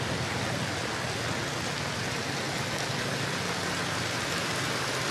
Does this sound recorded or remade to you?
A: recorded